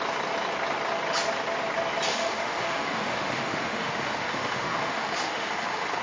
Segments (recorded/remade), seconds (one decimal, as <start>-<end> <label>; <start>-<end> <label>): 0.0-2.1 recorded; 2.1-6.0 remade